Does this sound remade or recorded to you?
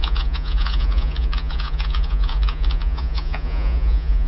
remade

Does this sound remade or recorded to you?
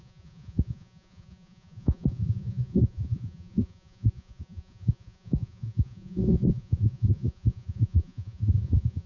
remade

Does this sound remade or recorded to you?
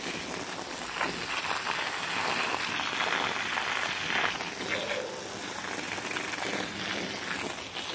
recorded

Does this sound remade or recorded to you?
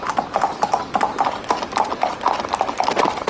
recorded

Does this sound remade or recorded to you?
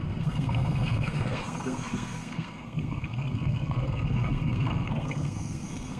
remade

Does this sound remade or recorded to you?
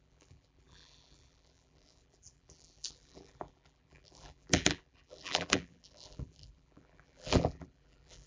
remade